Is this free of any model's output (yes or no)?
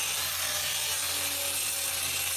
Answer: yes